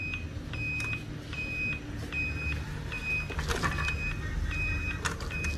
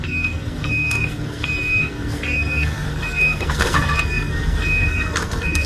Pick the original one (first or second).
first